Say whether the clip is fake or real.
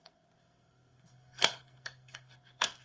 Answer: fake